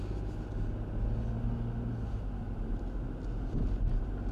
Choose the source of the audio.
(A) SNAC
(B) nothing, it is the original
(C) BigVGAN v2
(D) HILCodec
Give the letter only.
B